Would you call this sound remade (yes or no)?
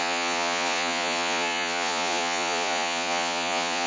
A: yes